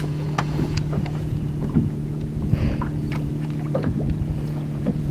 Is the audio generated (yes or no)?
yes